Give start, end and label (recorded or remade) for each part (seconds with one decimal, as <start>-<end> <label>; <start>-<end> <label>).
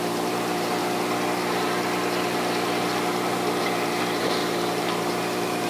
0.0-0.8 remade; 0.8-3.6 recorded; 3.6-5.7 remade